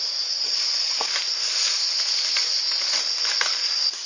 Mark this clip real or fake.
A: real